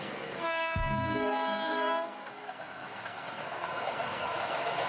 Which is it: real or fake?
fake